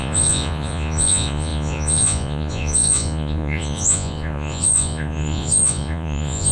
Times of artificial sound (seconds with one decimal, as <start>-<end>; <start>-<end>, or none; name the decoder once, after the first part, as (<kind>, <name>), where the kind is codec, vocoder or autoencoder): 0.0-6.5 (vocoder, Vocos)